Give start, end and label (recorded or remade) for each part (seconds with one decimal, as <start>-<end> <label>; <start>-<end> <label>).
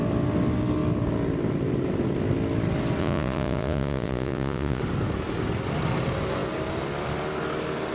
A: 0.0-3.0 recorded; 3.0-4.8 remade; 4.8-7.9 recorded